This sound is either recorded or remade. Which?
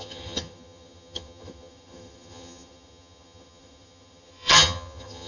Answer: remade